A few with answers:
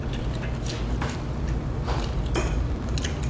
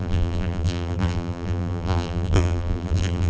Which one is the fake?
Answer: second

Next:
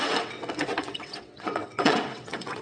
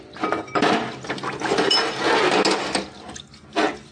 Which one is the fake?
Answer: first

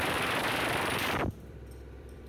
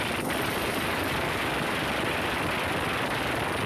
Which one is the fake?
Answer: first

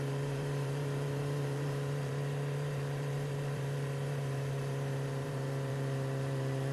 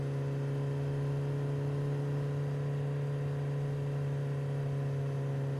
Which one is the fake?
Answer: first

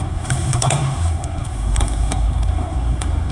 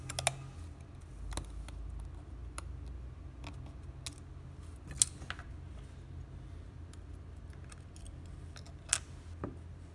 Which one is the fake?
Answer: first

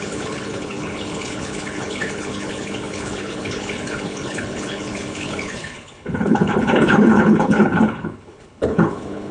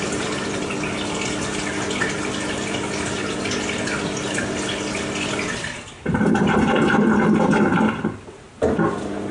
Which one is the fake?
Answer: first